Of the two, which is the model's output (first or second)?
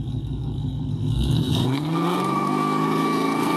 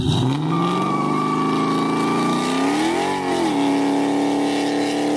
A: first